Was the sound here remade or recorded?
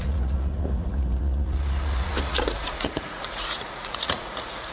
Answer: remade